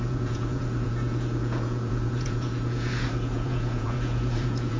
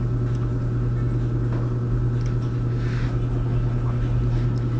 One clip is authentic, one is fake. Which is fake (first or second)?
first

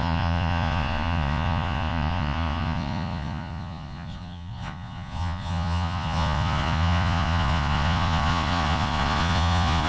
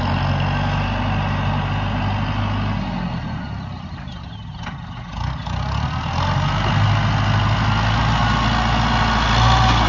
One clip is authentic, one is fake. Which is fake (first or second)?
first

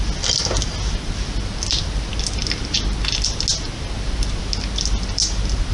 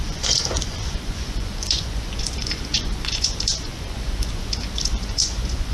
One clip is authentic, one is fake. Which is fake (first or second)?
second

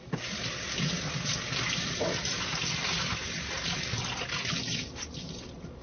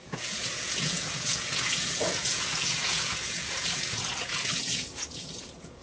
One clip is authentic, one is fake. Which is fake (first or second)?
second